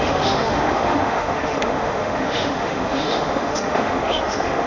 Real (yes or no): no